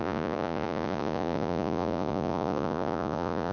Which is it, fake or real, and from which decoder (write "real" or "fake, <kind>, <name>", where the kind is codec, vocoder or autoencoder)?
fake, vocoder, Vocos